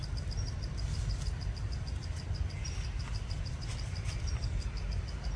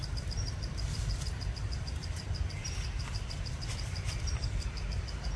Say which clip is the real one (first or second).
first